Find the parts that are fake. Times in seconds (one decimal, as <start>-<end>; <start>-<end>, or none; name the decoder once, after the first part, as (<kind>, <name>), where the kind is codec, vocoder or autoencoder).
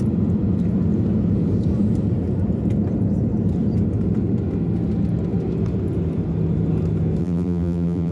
7.2-8.1 (vocoder, BigVGAN v2)